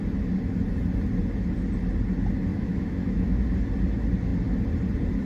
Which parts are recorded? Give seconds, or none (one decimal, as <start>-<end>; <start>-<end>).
0.0-2.5; 3.4-5.3